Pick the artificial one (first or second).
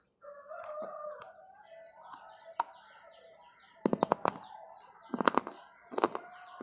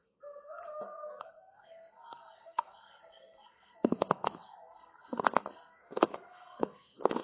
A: second